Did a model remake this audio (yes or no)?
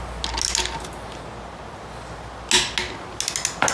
no